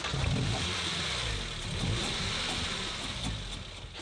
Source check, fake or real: real